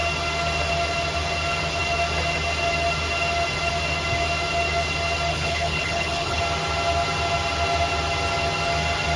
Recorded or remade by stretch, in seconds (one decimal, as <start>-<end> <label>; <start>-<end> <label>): 0.0-5.3 recorded; 5.3-6.4 remade; 6.4-9.2 recorded